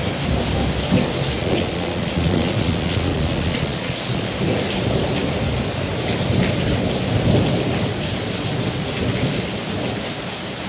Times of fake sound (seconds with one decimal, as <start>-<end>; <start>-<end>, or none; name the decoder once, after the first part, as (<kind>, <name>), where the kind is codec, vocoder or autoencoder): 1.4-4.3 (vocoder, Vocos)